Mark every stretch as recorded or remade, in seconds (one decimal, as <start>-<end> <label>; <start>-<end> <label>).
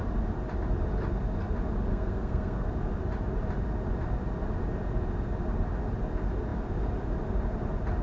0.0-1.9 recorded; 1.9-2.7 remade; 2.7-8.0 recorded